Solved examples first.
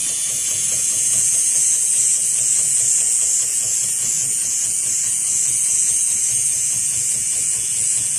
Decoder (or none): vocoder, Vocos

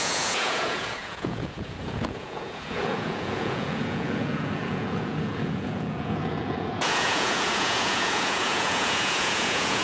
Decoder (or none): vocoder, Vocos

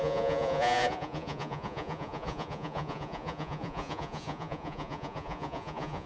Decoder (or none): vocoder, Vocos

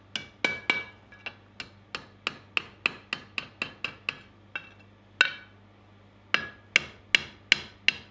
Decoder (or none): none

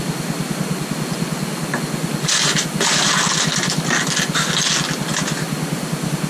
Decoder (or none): none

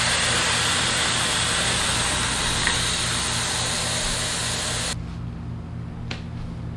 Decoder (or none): none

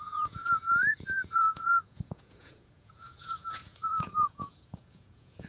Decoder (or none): vocoder, Vocos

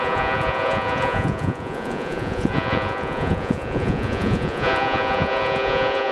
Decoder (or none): vocoder, Vocos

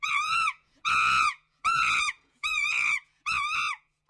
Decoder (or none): vocoder, Vocos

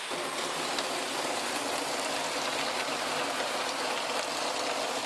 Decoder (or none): none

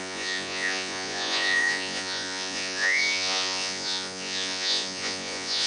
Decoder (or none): vocoder, Vocos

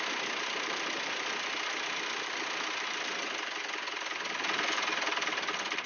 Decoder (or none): none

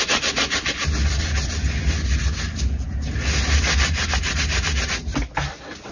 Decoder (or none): none